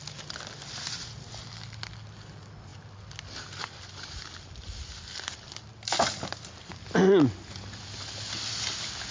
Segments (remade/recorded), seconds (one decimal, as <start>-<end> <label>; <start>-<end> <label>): 0.0-9.1 recorded